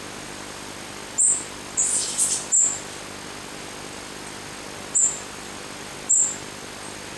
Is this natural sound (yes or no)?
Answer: yes